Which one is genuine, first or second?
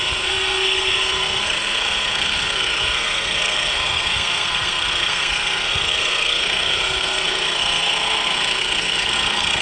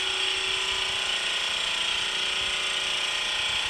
second